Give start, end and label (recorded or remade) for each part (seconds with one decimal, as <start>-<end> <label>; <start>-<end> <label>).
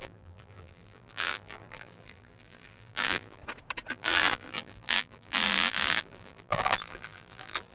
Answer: 0.0-3.4 remade; 3.4-3.9 recorded; 3.9-7.7 remade